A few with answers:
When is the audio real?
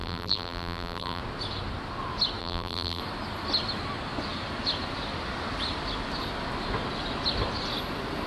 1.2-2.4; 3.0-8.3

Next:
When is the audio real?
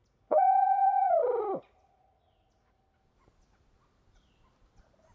2.8-5.1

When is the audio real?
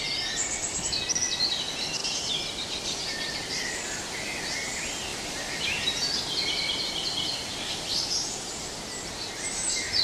0.0-2.0; 3.0-5.1; 6.2-7.5; 8.7-10.0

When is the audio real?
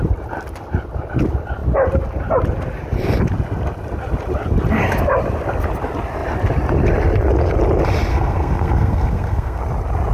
0.0-8.1; 9.6-10.1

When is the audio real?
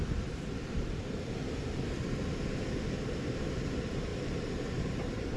2.0-3.6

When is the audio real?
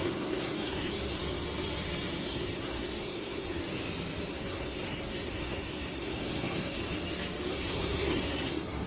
1.2-2.2; 3.6-4.3; 6.8-7.5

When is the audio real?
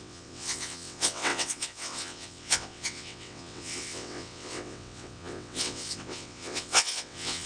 none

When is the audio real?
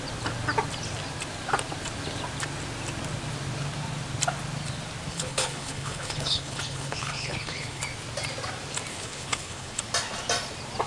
0.0-5.1; 7.8-8.9; 9.8-10.9